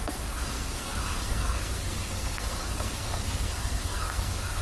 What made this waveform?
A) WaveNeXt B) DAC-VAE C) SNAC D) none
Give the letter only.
C